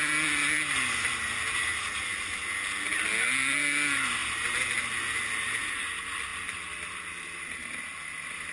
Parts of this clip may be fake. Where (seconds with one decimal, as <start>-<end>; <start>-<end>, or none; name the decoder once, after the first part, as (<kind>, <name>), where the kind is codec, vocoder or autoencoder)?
none